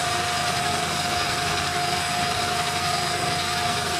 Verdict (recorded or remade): remade